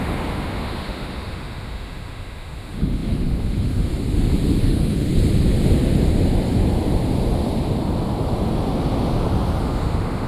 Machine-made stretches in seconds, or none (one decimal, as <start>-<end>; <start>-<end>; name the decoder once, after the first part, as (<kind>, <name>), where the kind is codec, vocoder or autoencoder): 0.0-3.9 (autoencoder, DAC-VAE); 4.6-5.1; 9.6-10.3